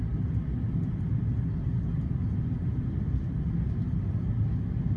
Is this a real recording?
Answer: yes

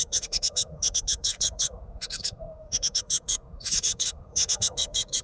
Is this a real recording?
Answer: no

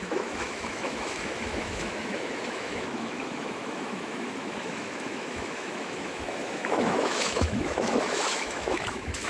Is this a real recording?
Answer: no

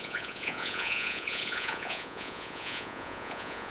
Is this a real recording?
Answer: no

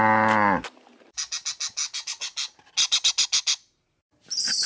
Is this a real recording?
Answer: yes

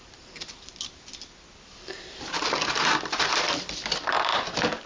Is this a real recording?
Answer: no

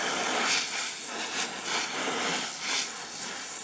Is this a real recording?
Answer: yes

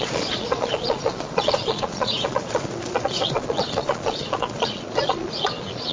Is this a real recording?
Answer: no